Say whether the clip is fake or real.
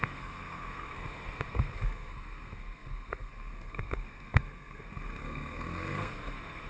fake